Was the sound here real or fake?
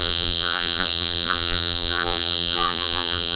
fake